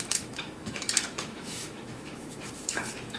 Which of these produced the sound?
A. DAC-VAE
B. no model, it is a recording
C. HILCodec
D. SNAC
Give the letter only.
A